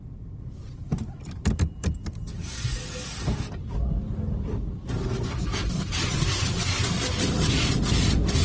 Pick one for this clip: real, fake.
real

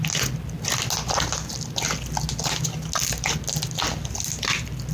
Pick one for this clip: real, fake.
real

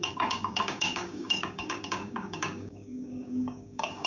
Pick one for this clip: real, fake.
fake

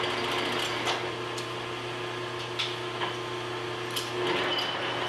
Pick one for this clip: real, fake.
real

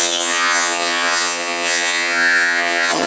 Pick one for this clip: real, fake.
fake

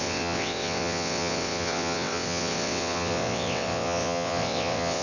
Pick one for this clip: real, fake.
fake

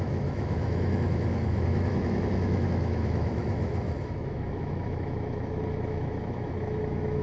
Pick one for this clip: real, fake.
fake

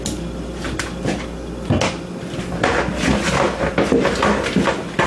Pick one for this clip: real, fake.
real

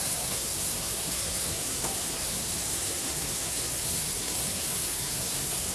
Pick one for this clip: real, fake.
fake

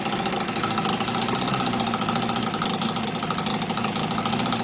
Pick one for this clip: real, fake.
real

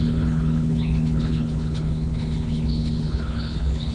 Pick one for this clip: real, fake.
fake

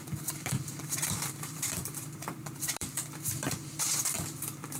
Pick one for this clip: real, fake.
fake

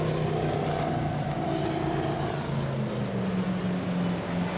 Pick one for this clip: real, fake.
real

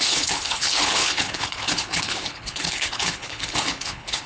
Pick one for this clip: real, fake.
fake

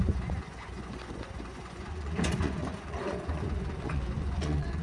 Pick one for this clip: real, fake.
fake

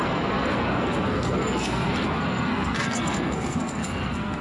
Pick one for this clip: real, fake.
fake